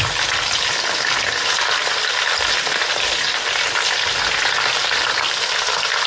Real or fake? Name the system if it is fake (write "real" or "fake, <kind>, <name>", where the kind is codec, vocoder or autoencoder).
real